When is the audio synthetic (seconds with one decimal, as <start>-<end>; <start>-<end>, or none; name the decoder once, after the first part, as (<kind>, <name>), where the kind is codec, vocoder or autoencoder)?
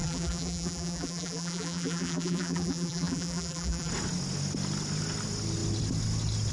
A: 0.0-3.9 (vocoder, BigVGAN v2)